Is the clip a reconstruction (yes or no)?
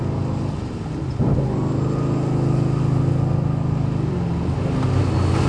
no